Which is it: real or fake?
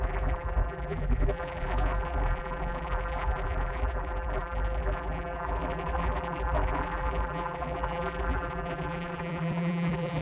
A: fake